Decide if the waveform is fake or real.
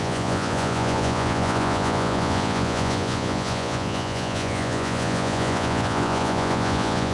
fake